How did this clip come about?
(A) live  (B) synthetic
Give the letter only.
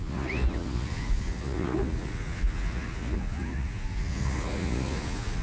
B